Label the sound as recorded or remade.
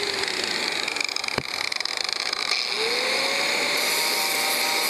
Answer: recorded